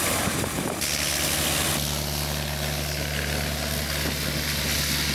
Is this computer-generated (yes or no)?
no